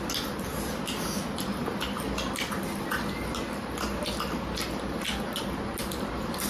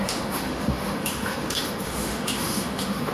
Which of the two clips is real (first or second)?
first